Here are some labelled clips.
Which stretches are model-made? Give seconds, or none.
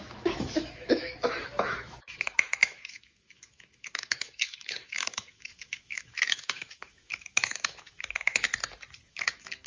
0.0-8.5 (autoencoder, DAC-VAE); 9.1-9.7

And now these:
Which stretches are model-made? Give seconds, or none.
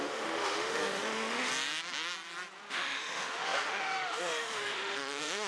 0.0-1.5 (autoencoder, DAC-VAE); 2.7-5.5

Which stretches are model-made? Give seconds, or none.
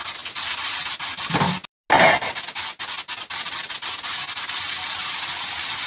none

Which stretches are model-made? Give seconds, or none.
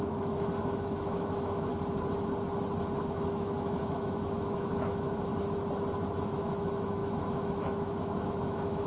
0.0-1.7 (autoencoder, DAC-VAE); 3.0-5.3; 6.2-8.9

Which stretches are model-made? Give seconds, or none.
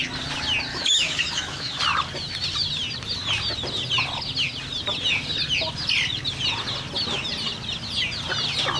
0.7-1.8 (autoencoder, DAC-VAE)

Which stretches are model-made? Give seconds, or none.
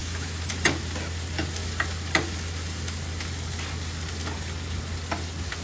0.0-0.5 (autoencoder, DAC-VAE)